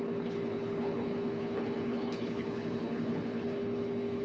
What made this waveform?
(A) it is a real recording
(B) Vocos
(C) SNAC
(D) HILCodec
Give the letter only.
D